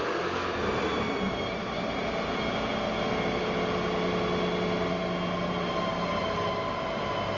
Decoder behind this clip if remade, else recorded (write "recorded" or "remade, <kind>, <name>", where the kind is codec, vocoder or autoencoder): recorded